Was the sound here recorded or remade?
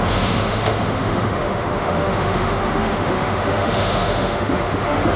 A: remade